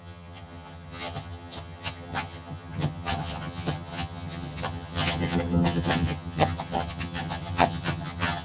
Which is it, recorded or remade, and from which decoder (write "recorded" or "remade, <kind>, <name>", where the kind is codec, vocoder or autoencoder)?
remade, vocoder, HiFi-GAN